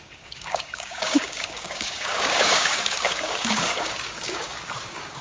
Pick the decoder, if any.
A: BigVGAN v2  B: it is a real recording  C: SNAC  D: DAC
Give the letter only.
D